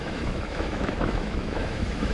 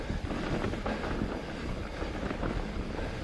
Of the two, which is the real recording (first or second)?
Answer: second